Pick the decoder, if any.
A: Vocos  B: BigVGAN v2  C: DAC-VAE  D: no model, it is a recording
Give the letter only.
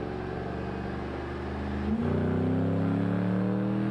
D